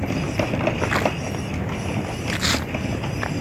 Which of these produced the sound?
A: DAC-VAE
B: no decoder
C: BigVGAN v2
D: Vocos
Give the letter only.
B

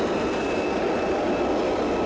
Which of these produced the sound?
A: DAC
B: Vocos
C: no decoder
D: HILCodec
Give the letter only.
C